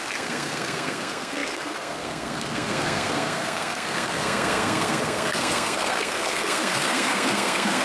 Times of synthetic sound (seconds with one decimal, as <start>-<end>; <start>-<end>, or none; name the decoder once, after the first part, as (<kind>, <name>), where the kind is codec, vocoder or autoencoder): 0.0-7.8 (codec, SNAC)